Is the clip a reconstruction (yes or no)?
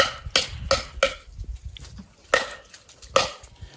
no